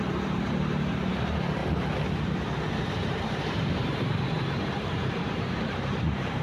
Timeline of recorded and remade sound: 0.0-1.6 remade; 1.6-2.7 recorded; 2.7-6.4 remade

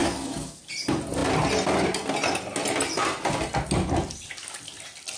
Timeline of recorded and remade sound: 0.0-0.6 remade; 0.6-5.2 recorded

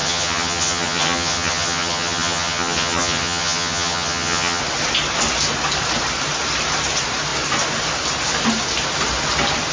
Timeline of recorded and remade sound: 0.0-4.6 remade; 4.6-9.7 recorded

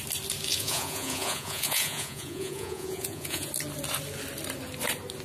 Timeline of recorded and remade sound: 0.0-0.5 recorded; 0.5-3.5 remade; 3.5-5.2 recorded

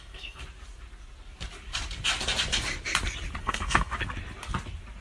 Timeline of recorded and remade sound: 0.0-0.4 remade; 0.4-3.4 recorded; 3.4-3.9 remade; 3.9-5.0 recorded

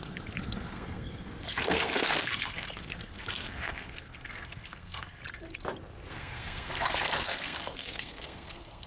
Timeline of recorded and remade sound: 0.0-5.2 remade; 5.2-6.1 recorded; 6.1-8.9 remade